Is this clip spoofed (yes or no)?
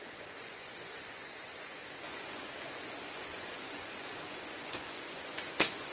yes